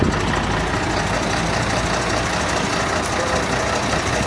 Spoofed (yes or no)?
no